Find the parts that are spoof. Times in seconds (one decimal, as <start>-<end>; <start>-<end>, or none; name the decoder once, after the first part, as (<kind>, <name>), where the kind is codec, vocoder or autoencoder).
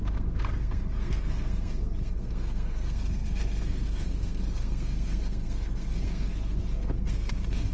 0.0-7.7 (codec, SNAC)